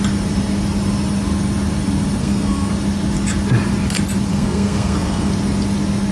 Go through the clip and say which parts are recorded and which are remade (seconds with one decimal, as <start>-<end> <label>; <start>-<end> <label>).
0.0-2.2 recorded; 2.2-2.7 remade; 2.7-4.3 recorded; 4.3-5.3 remade; 5.3-6.1 recorded